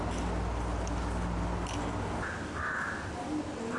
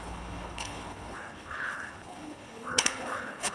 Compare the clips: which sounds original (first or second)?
first